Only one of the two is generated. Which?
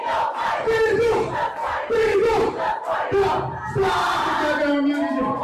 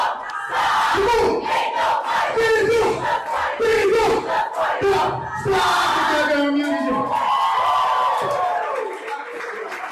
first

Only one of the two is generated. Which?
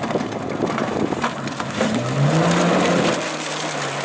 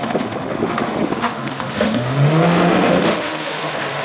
second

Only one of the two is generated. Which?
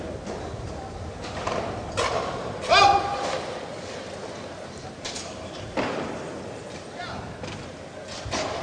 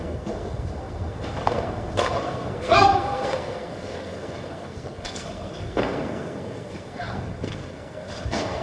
second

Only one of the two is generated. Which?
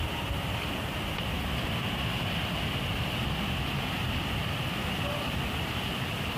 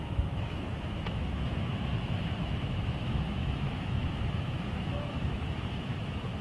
second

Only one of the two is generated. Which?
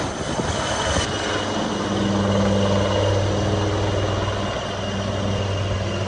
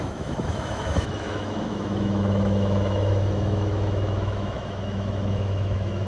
second